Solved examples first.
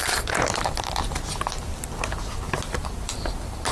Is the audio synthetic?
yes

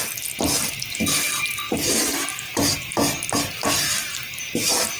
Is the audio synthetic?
no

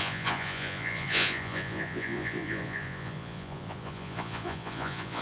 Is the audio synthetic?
yes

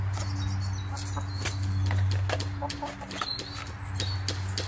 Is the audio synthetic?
no